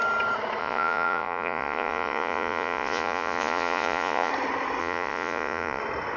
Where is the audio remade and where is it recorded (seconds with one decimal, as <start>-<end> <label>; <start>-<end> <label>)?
0.0-0.6 recorded; 0.6-4.3 remade; 4.3-4.8 recorded; 4.8-5.8 remade; 5.8-6.2 recorded